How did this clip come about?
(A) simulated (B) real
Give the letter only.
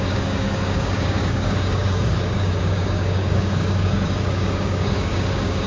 A